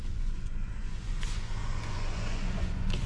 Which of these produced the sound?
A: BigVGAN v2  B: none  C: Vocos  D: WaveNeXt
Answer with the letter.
C